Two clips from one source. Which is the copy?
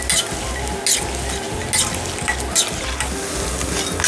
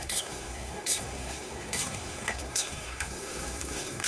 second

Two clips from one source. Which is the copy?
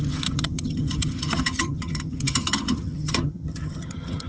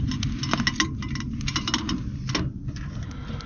first